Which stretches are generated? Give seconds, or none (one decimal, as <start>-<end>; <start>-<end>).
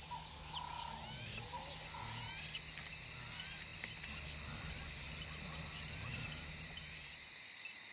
6.1-7.1